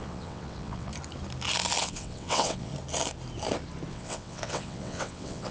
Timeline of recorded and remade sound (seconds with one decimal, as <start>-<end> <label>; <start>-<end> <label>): 0.0-0.9 remade; 0.9-1.8 recorded; 1.8-2.7 remade; 2.7-3.9 recorded; 3.9-5.5 remade